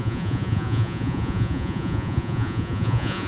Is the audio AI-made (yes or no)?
yes